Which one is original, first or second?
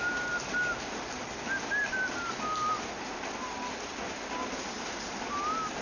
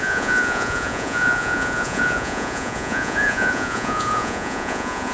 first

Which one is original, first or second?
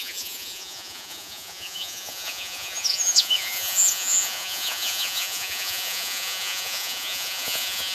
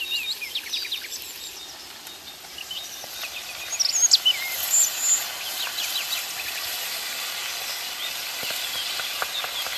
second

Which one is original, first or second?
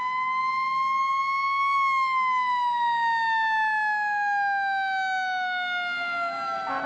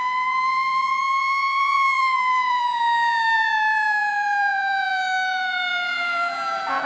first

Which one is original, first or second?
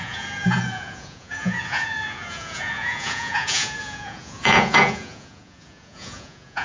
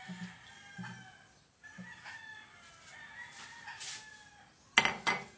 second